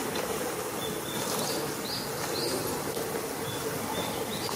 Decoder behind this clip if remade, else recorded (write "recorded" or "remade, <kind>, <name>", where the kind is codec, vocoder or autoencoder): recorded